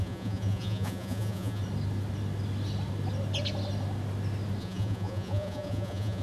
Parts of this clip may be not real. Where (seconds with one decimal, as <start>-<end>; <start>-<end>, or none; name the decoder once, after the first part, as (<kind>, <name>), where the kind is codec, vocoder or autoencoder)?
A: 0.0-1.6 (vocoder, Vocos); 4.6-6.2